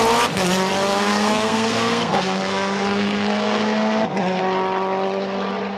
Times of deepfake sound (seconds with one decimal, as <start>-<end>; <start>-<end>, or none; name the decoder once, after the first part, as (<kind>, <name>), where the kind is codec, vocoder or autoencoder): 0.9-4.4 (codec, SNAC)

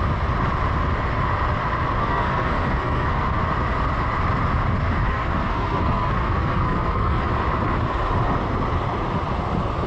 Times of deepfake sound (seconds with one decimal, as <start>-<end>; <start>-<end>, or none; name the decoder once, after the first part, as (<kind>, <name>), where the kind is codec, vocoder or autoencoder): 2.0-3.4 (codec, SNAC); 5.1-7.3

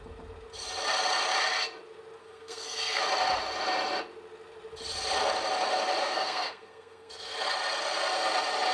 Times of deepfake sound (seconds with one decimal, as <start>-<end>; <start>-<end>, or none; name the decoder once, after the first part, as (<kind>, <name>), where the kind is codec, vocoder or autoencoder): 2.2-3.0 (codec, SNAC); 6.0-7.1

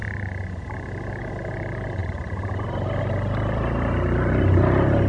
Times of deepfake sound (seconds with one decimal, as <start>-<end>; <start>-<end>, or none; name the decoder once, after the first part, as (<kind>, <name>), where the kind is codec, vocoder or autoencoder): none

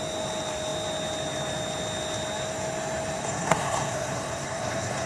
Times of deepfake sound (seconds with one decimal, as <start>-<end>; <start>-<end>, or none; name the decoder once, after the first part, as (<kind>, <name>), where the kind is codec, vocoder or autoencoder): 3.2-5.1 (codec, SNAC)

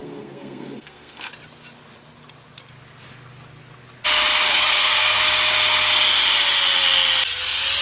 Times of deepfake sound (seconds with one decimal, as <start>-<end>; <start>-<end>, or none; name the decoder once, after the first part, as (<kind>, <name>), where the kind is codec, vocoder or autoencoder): 0.0-1.3 (codec, SNAC); 4.5-5.2